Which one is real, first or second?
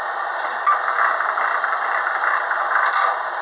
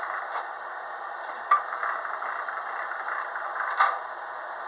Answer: first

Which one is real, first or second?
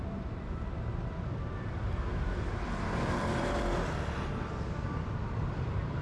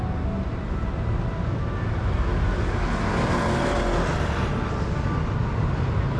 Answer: second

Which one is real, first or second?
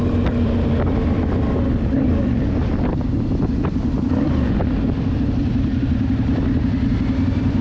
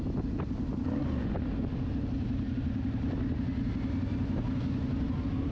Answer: second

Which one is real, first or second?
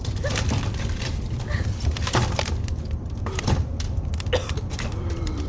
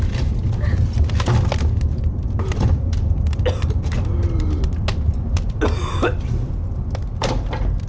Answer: second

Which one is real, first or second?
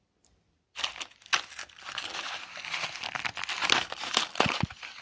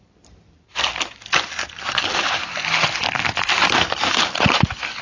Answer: first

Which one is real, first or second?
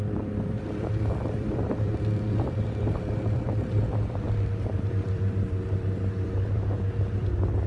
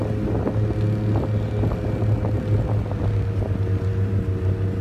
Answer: second